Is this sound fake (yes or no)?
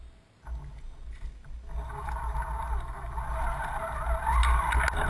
no